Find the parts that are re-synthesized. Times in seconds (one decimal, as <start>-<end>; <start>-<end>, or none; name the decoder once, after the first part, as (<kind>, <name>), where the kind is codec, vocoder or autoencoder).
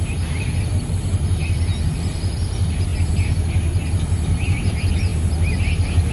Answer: none